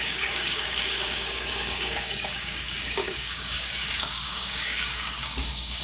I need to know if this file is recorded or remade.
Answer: remade